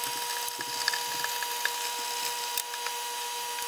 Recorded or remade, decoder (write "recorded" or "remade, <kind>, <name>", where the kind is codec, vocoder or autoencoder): recorded